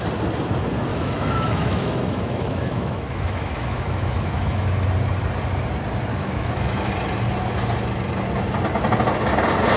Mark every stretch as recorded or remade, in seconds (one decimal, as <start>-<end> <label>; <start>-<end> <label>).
0.0-0.9 recorded; 0.9-4.7 remade; 4.7-6.1 recorded; 6.1-6.9 remade; 6.9-9.8 recorded